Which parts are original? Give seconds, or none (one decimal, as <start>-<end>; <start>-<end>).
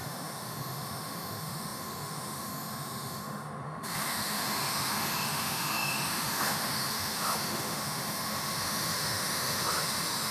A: none